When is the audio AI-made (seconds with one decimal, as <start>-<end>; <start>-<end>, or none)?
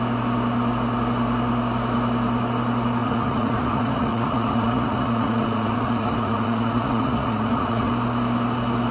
3.0-7.9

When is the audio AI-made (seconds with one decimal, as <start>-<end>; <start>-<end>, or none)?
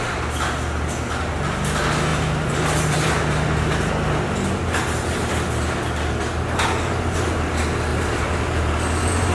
2.1-3.9; 7.9-8.6